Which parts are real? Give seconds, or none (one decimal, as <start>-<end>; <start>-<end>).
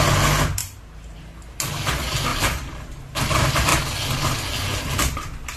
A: 0.0-0.6; 1.2-2.3; 3.2-5.6